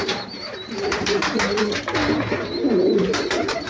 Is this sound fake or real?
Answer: fake